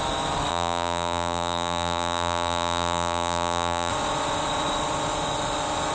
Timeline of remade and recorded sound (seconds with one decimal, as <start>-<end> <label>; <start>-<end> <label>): 0.0-0.5 recorded; 0.5-3.9 remade; 3.9-5.9 recorded